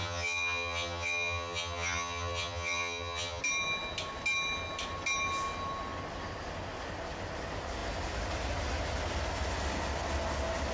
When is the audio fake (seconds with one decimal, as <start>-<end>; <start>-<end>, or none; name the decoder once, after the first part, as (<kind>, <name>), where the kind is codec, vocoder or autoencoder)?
0.0-3.4 (vocoder, HiFi-GAN)